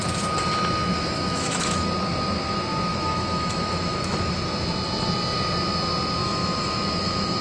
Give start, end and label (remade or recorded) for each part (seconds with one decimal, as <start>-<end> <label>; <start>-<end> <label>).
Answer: 0.0-0.9 recorded; 0.9-1.9 remade; 1.9-2.9 recorded; 2.9-4.3 remade; 4.3-6.2 recorded; 6.2-7.4 remade